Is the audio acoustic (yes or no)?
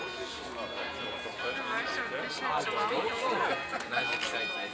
yes